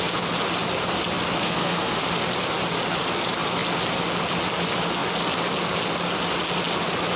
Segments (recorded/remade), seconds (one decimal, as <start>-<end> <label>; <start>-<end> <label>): 0.0-1.4 recorded; 1.4-2.0 remade; 2.0-7.2 recorded